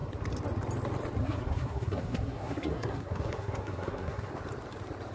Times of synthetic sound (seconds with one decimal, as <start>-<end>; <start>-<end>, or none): 1.2-4.3

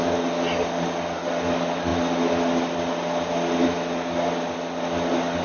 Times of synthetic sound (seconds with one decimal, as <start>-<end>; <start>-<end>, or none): none

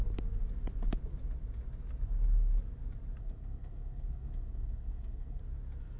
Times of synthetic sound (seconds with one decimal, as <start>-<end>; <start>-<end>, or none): 3.2-5.4

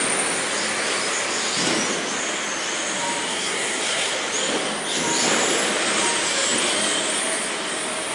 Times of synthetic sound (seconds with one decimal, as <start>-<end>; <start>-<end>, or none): 3.3-4.1

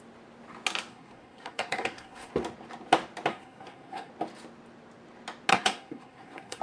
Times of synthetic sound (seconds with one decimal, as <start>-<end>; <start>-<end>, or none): 0.9-2.3; 3.3-4.1; 5.5-6.6

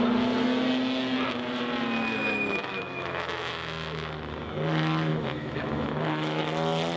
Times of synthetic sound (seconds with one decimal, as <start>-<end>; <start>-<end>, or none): 2.7-3.5; 5.1-6.4